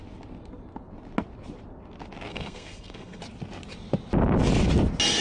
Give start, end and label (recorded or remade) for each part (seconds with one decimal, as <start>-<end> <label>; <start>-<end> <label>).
0.0-2.3 recorded; 2.3-3.2 remade; 3.2-5.2 recorded